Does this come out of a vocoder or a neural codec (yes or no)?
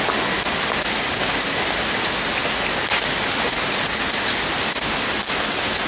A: no